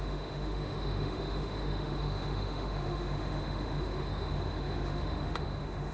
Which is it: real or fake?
fake